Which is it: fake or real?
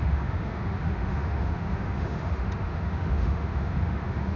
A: fake